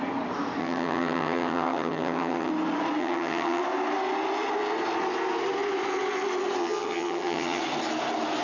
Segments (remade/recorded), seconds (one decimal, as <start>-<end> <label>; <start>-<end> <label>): 0.0-0.6 recorded; 0.6-2.5 remade; 2.5-3.0 recorded; 3.0-3.6 remade; 3.6-6.6 recorded; 6.6-7.6 remade; 7.6-8.4 recorded